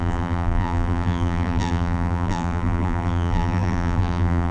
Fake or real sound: fake